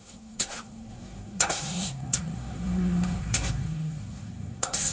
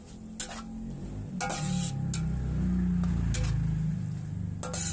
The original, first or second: second